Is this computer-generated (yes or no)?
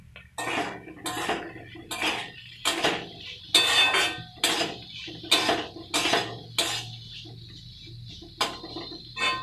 no